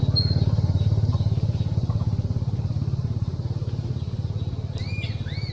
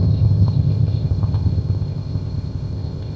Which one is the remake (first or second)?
second